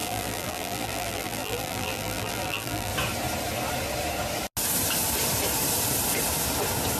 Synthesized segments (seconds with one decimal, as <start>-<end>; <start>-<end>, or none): 0.0-2.9